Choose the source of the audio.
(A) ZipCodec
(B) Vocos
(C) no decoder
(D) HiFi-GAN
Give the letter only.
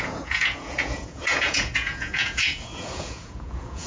B